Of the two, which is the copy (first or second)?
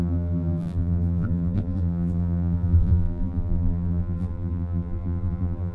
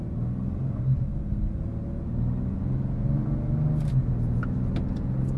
first